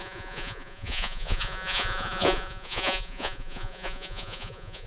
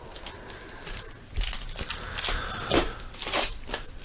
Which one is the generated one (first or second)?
first